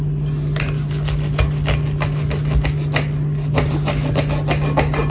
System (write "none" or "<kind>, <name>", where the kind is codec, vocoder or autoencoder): none